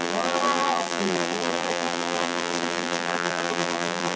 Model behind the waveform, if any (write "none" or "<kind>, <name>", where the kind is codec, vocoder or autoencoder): vocoder, BigVGAN v2